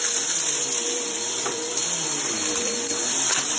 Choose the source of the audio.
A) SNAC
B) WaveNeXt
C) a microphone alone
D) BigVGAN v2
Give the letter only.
D